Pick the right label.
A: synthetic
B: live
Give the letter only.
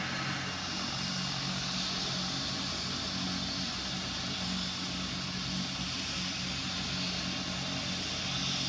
B